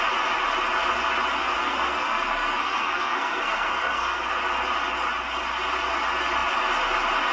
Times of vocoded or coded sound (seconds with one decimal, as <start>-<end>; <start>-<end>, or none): 1.6-4.3